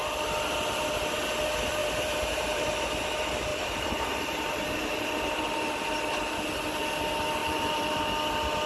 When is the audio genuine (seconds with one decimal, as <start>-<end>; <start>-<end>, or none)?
0.0-1.8; 2.9-3.5; 5.9-7.4; 8.0-8.7